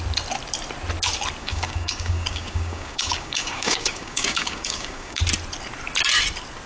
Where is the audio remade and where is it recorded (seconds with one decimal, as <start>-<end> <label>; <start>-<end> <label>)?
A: 0.0-1.4 recorded; 1.4-5.2 remade; 5.2-6.7 recorded